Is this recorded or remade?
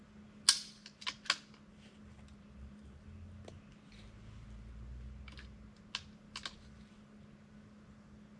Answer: recorded